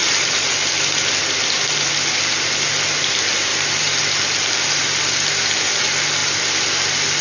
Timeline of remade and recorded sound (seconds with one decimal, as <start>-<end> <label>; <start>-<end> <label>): 0.0-1.2 remade; 1.2-3.5 recorded; 3.5-5.0 remade; 5.0-7.2 recorded